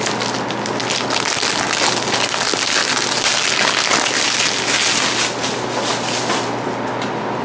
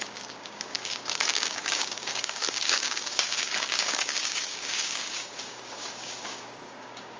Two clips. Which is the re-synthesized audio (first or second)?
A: second